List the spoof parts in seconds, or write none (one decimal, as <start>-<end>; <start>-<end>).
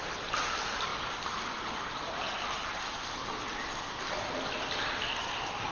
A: none